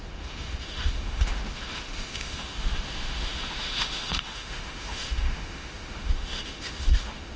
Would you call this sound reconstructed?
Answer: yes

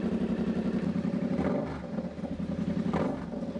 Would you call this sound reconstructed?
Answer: no